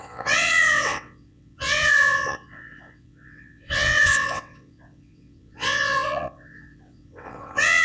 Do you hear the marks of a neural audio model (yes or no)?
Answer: yes